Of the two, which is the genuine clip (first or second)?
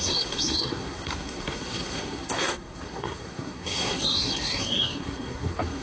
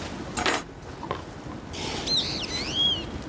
second